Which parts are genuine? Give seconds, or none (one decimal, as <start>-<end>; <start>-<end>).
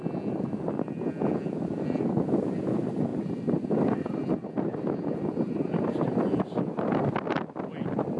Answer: 0.0-8.2